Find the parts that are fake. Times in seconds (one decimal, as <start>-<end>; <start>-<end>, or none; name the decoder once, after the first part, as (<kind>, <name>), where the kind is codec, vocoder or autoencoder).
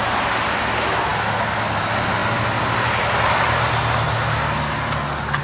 none